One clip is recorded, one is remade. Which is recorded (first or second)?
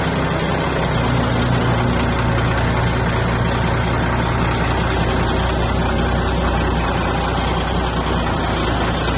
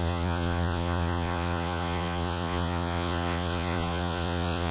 first